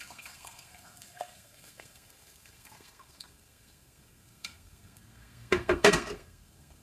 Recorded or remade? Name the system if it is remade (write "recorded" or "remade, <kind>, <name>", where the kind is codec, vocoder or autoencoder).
remade, codec, SNAC